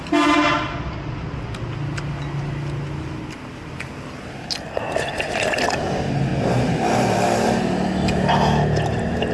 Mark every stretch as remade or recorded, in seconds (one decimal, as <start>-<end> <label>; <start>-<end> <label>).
0.0-9.3 recorded